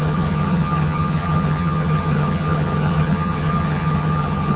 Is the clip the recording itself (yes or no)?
no